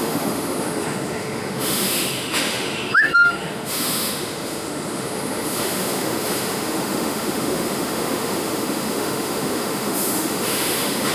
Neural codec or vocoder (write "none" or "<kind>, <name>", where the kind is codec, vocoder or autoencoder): autoencoder, DAC-VAE